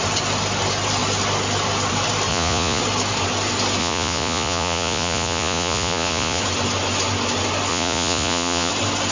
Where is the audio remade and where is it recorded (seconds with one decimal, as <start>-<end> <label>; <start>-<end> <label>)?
0.0-2.3 recorded; 2.3-2.8 remade; 2.8-3.8 recorded; 3.8-6.4 remade; 6.4-7.7 recorded; 7.7-8.7 remade; 8.7-9.1 recorded